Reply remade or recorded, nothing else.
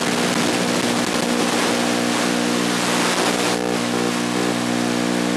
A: recorded